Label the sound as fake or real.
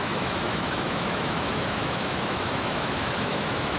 fake